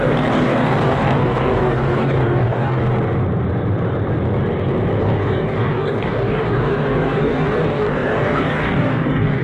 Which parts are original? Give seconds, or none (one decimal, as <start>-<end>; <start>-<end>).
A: 2.8-5.0